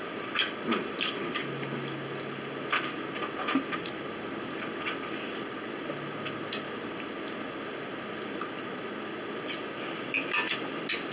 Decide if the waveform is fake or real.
real